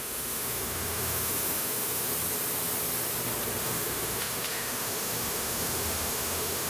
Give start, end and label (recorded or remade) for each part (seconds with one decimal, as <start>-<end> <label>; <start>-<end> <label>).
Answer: 0.0-2.1 remade; 2.1-3.6 recorded; 3.6-6.7 remade